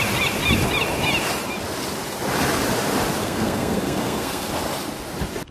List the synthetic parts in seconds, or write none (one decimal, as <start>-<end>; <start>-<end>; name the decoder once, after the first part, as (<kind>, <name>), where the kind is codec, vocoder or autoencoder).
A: 3.2-4.5 (codec, SNAC)